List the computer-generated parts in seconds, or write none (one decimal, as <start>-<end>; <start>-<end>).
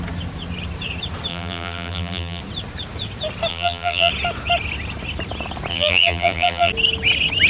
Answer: 1.3-2.4; 3.5-4.1; 5.7-6.7